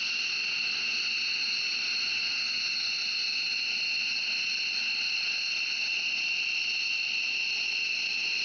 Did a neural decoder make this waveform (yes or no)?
no